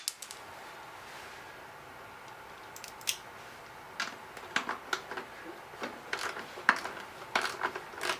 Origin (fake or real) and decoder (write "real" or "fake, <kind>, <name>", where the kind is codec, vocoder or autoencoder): real